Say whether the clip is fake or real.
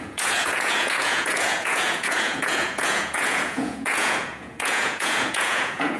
fake